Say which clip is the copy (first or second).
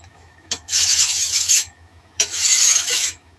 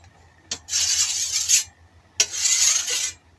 first